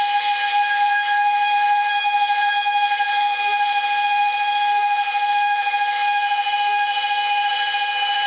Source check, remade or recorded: remade